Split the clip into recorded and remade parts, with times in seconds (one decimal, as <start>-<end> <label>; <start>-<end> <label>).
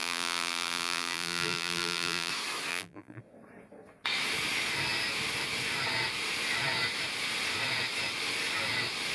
0.0-2.3 remade; 2.3-2.7 recorded; 2.7-3.2 remade; 3.2-9.1 recorded